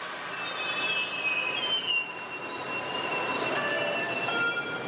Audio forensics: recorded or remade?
recorded